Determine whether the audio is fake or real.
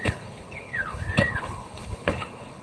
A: fake